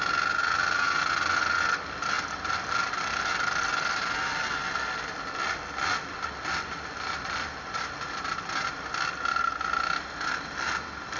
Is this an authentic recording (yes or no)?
yes